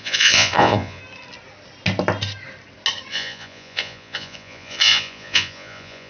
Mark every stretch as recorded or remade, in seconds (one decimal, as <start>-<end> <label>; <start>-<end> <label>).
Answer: 0.0-1.0 remade; 1.0-3.1 recorded; 3.1-6.1 remade